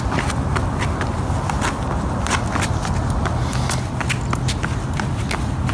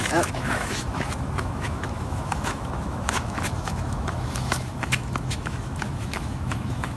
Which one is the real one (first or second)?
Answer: first